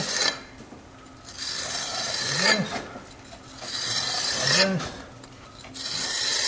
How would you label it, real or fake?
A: real